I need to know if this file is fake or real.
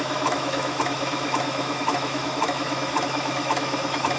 fake